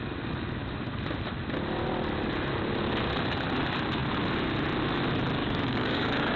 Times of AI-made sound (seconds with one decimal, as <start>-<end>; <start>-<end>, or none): 5.4-6.4

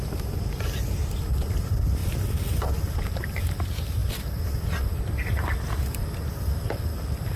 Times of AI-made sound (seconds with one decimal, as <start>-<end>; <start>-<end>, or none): none

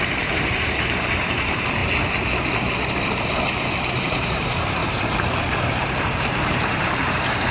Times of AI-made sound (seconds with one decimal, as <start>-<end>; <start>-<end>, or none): 0.0-1.8; 4.0-4.8; 5.4-7.5

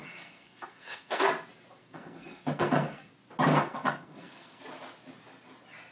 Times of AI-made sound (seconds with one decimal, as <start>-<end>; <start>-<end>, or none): 0.0-1.3; 1.8-3.1; 3.5-4.6

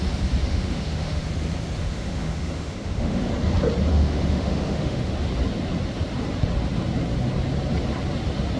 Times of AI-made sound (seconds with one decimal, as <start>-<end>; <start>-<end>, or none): 0.4-1.2; 1.8-3.3; 3.9-5.1